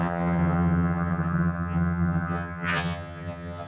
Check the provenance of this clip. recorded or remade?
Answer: remade